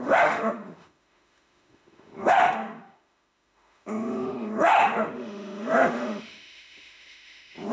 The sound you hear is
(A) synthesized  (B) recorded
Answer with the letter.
A